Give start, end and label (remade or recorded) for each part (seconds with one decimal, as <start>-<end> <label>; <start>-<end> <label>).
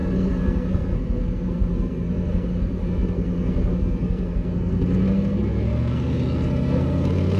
0.0-7.4 remade